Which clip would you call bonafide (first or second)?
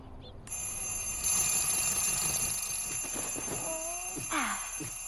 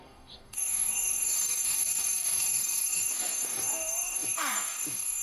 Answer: first